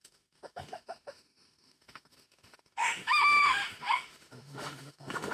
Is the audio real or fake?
fake